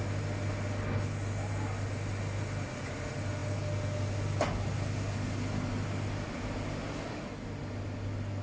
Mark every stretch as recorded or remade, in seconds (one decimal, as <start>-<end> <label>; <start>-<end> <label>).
0.0-8.4 recorded